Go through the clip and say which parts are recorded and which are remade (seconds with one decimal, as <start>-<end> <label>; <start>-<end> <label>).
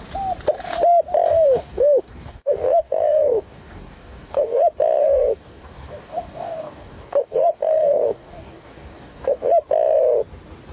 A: 0.0-1.3 recorded; 1.3-4.6 remade; 4.6-5.0 recorded; 5.0-9.5 remade; 9.5-10.7 recorded